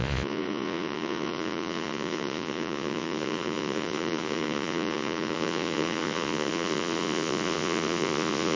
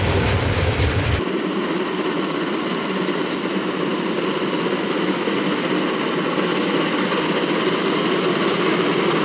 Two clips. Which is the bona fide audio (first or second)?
second